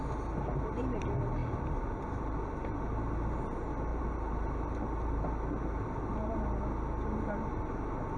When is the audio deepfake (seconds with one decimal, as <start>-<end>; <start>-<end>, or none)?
3.9-5.2; 6.1-6.6